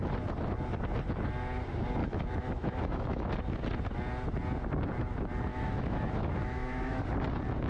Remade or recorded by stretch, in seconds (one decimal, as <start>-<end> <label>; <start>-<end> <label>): 0.0-2.0 recorded; 2.0-3.3 remade; 3.3-5.5 recorded; 5.5-7.0 remade; 7.0-7.7 recorded